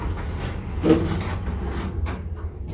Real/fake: real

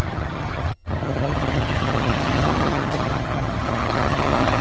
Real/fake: fake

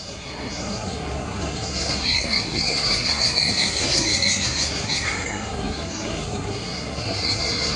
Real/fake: fake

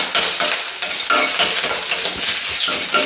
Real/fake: real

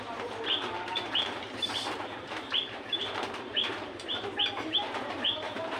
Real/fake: fake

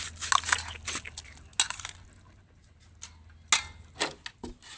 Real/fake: real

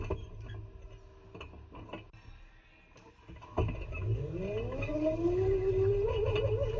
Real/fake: real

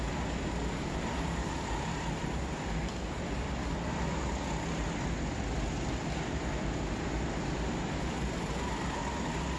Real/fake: real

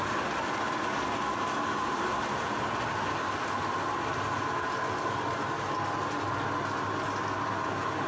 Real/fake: real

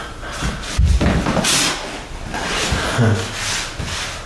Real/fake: real